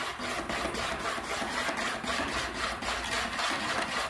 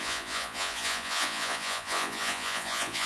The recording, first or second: first